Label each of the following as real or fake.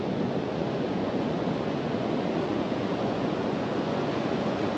fake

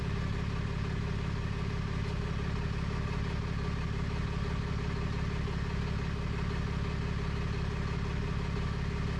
real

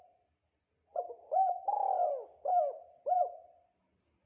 real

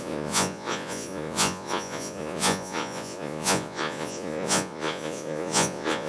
fake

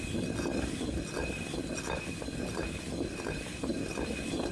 real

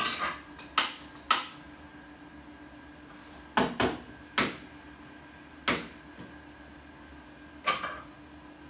real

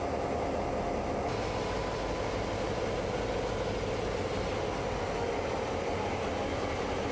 real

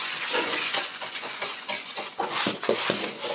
fake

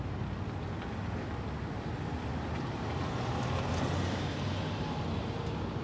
real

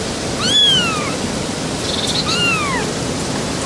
real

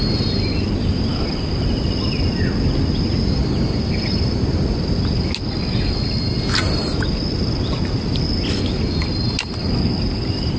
real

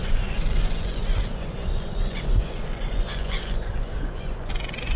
fake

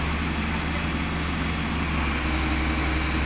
real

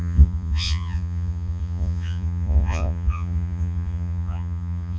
fake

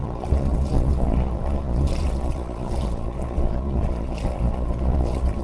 fake